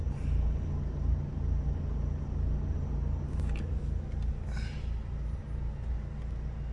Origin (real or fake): real